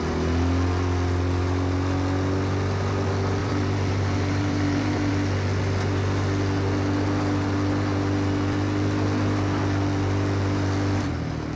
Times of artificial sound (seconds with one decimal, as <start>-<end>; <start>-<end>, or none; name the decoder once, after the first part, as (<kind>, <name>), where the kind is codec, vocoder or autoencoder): 3.4-5.1 (vocoder, BigVGAN v2)